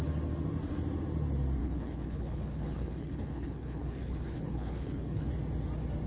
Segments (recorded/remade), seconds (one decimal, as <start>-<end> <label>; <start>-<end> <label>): 0.0-1.6 recorded; 1.6-5.3 remade; 5.3-6.1 recorded